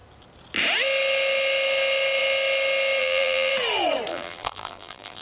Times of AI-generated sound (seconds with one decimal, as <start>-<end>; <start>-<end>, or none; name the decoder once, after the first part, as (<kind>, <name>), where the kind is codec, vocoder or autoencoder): 3.0-3.5 (vocoder, BigVGAN v2); 4.1-5.2

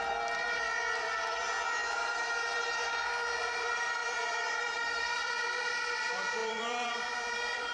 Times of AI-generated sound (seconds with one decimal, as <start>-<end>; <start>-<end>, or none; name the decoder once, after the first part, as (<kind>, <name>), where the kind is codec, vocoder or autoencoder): 0.0-1.8 (vocoder, BigVGAN v2); 3.4-7.7

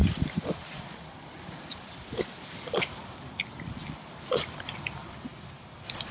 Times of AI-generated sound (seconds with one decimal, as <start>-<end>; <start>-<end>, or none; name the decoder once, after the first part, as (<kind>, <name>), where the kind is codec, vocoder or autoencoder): 0.0-2.2 (vocoder, BigVGAN v2); 3.0-5.3